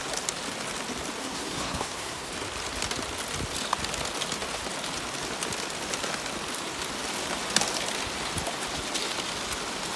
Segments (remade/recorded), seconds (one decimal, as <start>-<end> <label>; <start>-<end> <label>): 0.0-1.2 recorded; 1.2-2.3 remade; 2.3-10.0 recorded